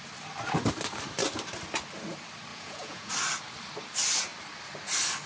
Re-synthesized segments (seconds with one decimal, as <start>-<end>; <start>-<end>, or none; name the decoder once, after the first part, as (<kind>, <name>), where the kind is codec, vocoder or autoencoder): 2.5-3.1 (vocoder, Vocos)